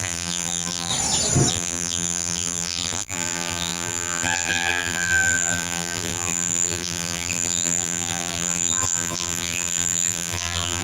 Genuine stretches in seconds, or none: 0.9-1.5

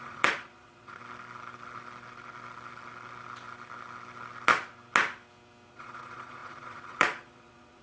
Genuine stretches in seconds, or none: 1.0-5.7